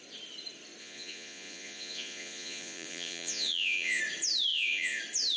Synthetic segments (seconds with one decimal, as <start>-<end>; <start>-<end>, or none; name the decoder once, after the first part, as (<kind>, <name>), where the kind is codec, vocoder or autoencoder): 0.8-4.0 (vocoder, Vocos); 4.5-5.0